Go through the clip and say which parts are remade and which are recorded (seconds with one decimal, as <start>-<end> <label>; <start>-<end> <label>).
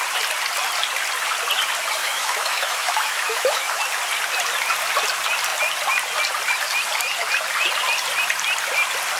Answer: 0.0-2.0 recorded; 2.0-3.8 remade; 3.8-9.2 recorded